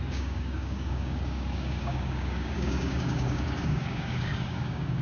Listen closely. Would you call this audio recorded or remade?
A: remade